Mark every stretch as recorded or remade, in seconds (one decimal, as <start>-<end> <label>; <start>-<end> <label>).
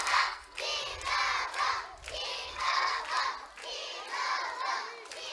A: 0.0-0.6 remade; 0.6-2.3 recorded; 2.3-3.0 remade; 3.0-5.3 recorded